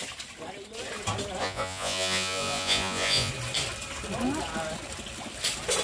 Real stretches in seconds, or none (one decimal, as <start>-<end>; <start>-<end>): 0.0-1.4; 3.3-5.8